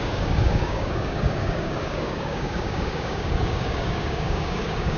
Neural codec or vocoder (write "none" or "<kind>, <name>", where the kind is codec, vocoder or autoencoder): codec, DAC